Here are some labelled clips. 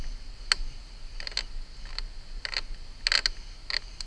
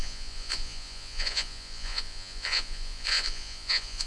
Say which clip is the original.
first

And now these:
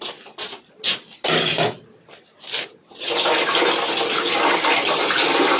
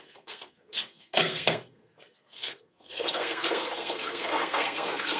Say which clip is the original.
first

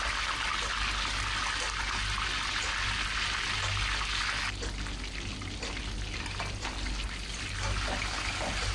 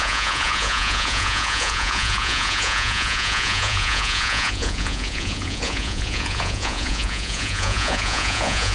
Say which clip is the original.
first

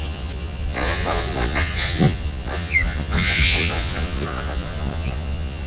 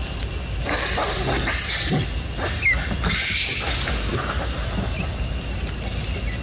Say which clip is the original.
second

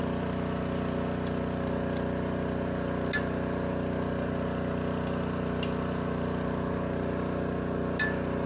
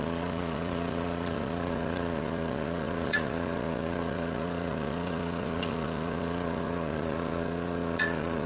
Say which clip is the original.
first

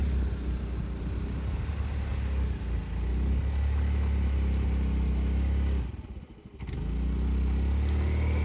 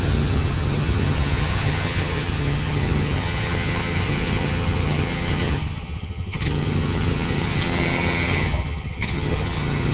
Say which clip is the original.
first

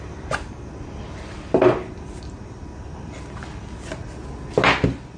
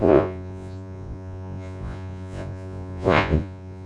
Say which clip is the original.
first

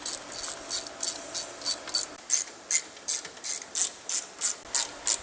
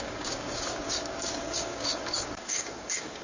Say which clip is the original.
first